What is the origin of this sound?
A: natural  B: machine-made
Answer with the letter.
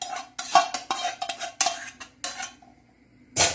A